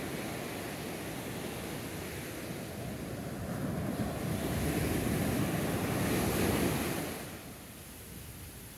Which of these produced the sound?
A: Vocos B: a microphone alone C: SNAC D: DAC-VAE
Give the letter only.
B